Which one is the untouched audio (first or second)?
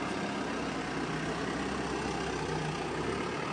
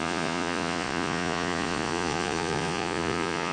first